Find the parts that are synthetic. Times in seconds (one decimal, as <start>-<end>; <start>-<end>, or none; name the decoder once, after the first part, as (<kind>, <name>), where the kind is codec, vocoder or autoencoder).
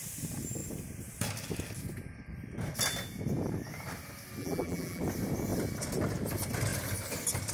4.4-5.0 (vocoder, BigVGAN v2)